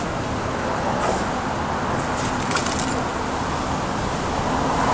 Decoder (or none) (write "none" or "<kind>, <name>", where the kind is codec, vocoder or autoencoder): none